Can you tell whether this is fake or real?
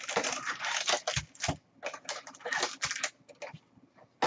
real